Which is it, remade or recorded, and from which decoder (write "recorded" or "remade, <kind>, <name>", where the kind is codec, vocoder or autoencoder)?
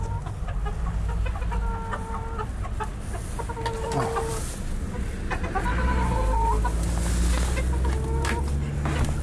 recorded